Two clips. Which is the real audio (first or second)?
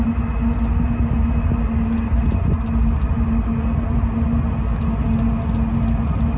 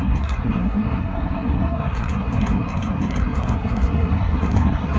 first